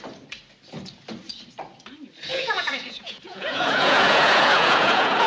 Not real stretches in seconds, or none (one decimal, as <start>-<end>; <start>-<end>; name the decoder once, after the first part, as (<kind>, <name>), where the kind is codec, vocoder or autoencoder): 2.3-5.3 (vocoder, Vocos)